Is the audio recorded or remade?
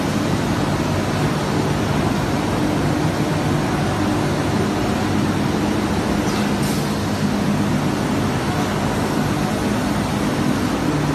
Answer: recorded